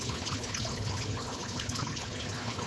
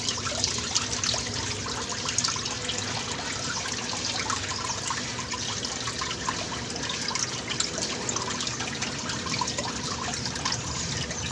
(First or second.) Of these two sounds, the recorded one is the second